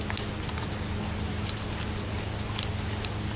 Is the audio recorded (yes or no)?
yes